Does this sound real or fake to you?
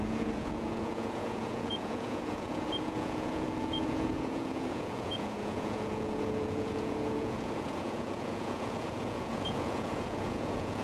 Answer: fake